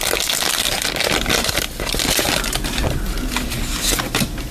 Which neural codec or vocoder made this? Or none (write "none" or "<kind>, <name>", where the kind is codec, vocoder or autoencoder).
none